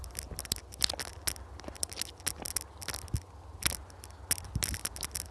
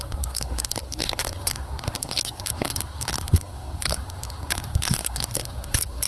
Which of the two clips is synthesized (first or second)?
second